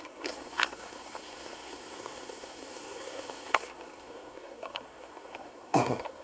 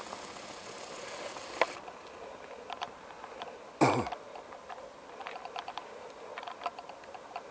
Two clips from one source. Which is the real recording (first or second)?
second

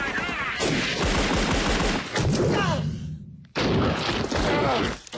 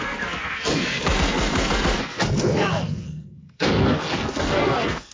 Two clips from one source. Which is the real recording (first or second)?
first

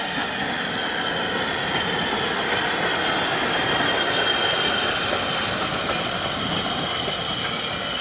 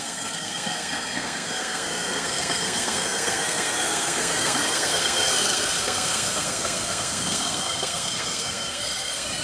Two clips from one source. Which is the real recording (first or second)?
first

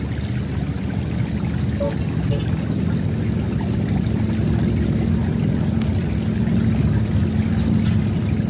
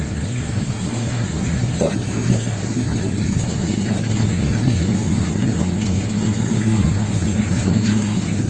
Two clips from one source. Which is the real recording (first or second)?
first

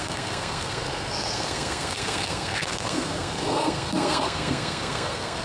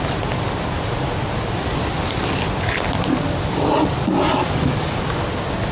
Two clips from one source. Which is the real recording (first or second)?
second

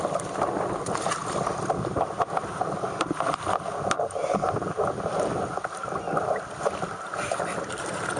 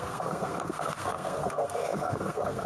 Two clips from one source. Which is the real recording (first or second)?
first